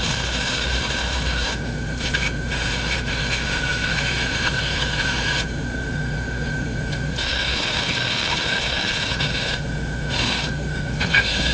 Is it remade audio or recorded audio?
remade